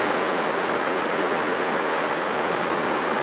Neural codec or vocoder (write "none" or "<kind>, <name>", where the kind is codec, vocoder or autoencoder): vocoder, Vocos